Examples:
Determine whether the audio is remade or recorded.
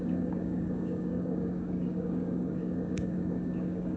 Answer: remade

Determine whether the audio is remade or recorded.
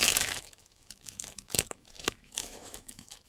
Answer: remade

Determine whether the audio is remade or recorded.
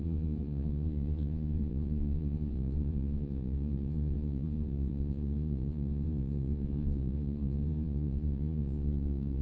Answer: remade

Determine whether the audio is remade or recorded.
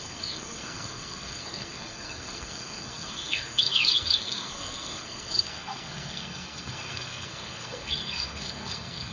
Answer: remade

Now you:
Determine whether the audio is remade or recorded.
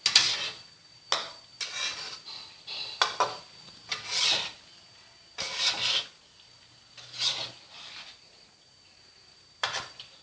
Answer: recorded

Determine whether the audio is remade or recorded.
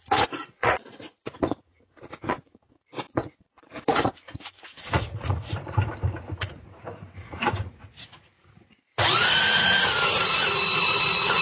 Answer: remade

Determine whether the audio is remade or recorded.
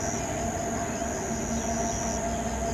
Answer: recorded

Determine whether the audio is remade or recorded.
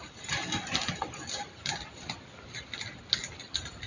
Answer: recorded